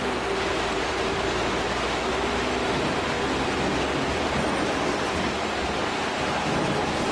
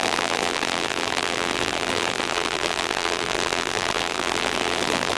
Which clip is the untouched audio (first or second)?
first